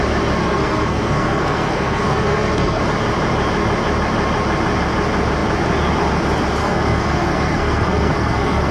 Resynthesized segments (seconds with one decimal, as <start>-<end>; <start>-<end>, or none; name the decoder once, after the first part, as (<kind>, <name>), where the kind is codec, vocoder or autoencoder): 0.4-2.8 (codec, SNAC); 6.6-8.7